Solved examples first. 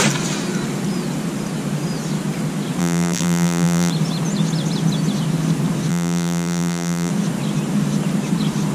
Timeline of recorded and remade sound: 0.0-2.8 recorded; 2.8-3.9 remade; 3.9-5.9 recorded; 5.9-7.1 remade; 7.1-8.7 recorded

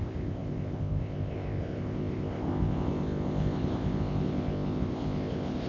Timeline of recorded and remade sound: 0.0-5.7 remade

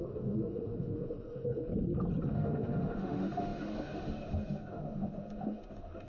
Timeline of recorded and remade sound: 0.0-1.7 remade; 1.7-2.3 recorded; 2.3-6.1 remade

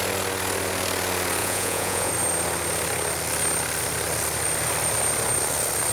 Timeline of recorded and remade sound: 0.0-1.4 recorded; 1.4-2.1 remade; 2.1-5.9 recorded

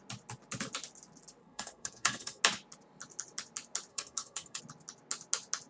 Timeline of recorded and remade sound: 0.0-1.4 recorded; 1.4-2.4 remade; 2.4-3.9 recorded; 3.9-4.6 remade; 4.6-5.7 recorded

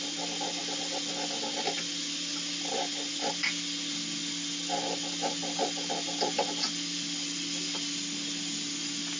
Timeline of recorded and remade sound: 0.0-9.2 recorded